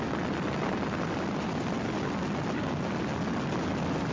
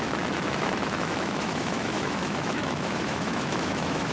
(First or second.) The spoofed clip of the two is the second